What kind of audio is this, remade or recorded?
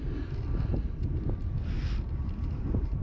recorded